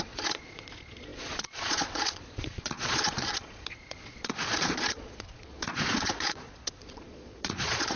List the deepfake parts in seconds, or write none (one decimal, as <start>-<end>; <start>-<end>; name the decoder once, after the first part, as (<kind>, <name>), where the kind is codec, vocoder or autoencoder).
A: 0.0-8.0 (vocoder, Vocos)